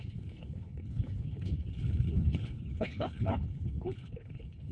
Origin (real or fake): fake